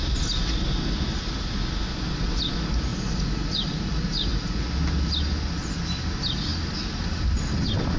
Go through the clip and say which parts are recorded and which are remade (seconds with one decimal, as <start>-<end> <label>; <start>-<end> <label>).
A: 0.0-2.9 recorded; 2.9-4.6 remade; 4.6-8.0 recorded